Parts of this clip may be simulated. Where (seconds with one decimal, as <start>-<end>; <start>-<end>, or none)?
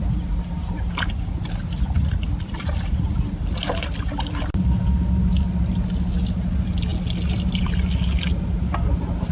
none